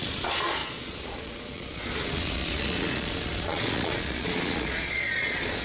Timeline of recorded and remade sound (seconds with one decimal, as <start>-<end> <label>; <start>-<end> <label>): 0.0-5.6 remade